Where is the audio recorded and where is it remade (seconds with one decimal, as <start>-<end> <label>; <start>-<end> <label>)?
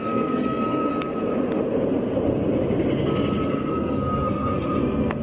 0.0-0.9 remade; 0.9-3.5 recorded; 3.5-5.2 remade